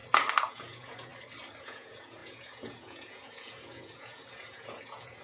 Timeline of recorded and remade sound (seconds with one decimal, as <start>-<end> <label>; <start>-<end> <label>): 0.0-0.5 recorded; 0.5-1.1 remade; 1.1-1.6 recorded; 1.6-5.2 remade